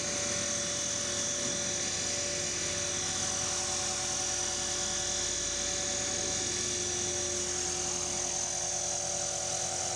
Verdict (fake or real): real